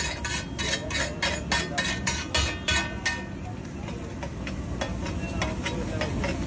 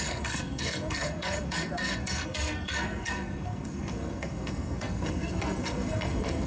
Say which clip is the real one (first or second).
first